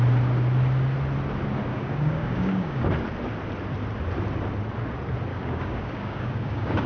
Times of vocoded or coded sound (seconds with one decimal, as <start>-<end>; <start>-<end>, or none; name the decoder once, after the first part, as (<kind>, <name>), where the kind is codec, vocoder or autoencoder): 1.7-2.9 (codec, DAC); 5.3-6.9